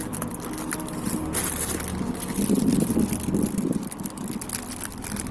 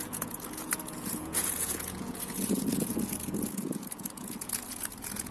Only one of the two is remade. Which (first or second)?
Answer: second